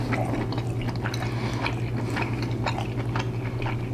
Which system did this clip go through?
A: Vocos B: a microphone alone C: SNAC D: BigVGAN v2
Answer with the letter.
B